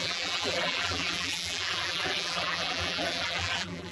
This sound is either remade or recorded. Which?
remade